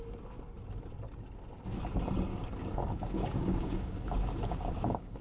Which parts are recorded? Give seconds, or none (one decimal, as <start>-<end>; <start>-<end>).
0.0-2.3